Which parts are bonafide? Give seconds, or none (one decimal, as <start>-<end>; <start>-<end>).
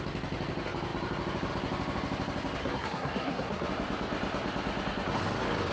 0.0-2.6; 3.7-5.7